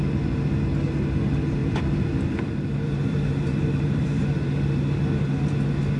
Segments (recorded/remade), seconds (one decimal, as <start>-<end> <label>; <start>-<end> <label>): 0.0-1.6 recorded; 1.6-4.2 remade; 4.2-6.0 recorded